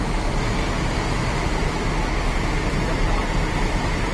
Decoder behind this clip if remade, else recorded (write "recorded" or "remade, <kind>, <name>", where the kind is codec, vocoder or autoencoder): recorded